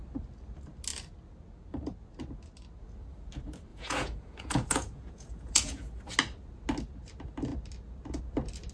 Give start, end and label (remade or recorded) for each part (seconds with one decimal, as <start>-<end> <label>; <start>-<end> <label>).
0.0-3.7 recorded; 3.7-6.0 remade; 6.0-8.7 recorded